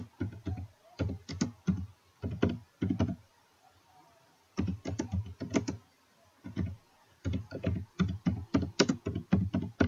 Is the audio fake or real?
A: real